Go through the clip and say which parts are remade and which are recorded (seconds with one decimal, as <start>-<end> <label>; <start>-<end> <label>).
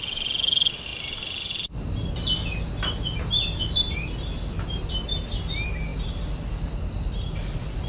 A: 0.0-7.9 recorded